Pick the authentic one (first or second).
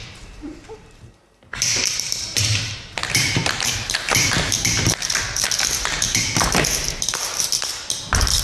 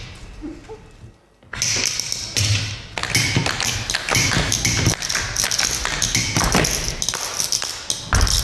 second